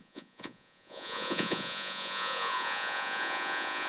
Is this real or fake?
fake